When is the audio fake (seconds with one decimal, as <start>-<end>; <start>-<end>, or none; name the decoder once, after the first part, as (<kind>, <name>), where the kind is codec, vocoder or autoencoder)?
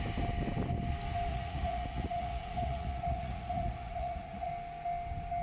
1.3-4.5 (vocoder, Vocos)